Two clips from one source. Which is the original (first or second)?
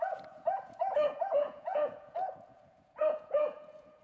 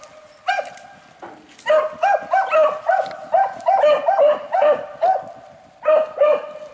second